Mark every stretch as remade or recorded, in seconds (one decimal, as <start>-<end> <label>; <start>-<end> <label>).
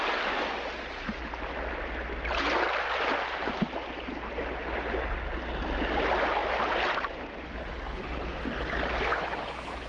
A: 0.0-9.1 recorded; 9.1-9.9 remade